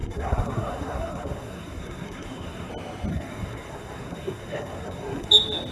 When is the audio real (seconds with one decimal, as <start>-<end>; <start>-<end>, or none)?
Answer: 2.7-3.1; 5.3-5.7